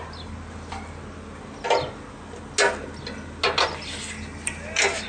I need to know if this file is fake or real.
real